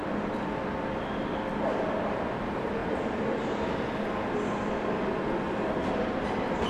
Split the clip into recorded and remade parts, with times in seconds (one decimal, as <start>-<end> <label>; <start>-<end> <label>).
0.0-6.7 recorded